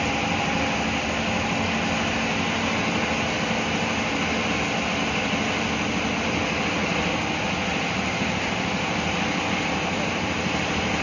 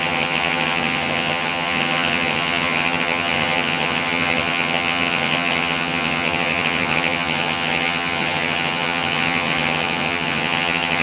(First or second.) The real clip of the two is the first